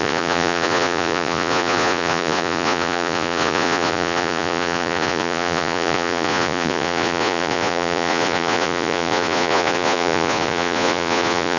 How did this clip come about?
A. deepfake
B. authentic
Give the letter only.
A